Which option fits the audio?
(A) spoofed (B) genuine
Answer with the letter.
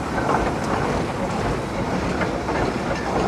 B